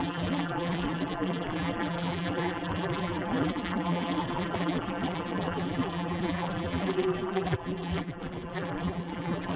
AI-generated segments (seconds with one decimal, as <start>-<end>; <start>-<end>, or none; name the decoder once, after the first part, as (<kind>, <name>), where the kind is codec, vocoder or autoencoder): 0.0-9.6 (vocoder, BigVGAN v2)